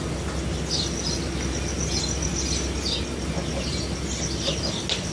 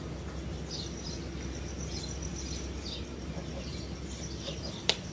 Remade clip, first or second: second